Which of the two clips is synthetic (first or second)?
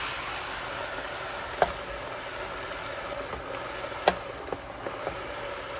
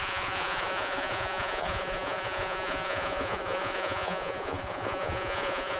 second